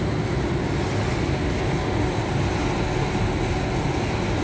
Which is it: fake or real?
real